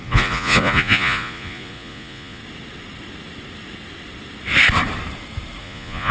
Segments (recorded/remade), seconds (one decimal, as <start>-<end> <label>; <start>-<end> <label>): 0.0-2.4 remade; 2.4-5.6 recorded; 5.6-6.1 remade